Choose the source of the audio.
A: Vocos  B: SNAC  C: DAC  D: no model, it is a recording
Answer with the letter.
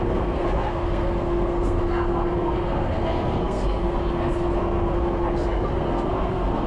B